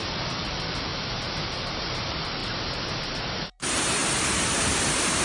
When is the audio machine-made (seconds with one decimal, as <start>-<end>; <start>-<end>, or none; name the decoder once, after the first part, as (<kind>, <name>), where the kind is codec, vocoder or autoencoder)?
0.0-0.9 (vocoder, BigVGAN v2); 1.8-4.0; 4.6-5.2